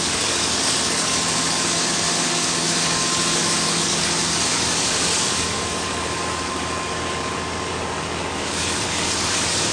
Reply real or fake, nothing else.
fake